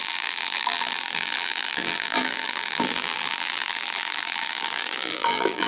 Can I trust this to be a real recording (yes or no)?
no